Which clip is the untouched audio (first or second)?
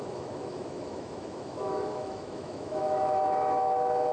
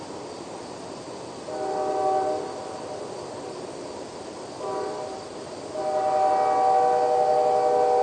second